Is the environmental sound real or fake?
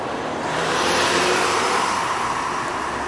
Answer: fake